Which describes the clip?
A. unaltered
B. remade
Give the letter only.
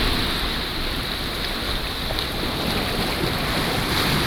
A